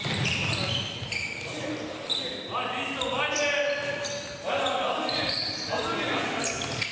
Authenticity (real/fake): real